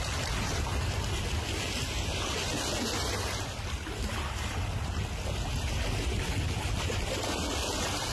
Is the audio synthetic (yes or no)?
no